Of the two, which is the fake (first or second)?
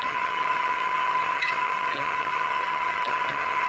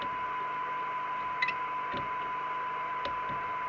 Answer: first